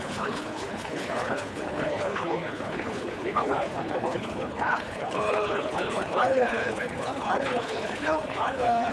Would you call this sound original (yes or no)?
no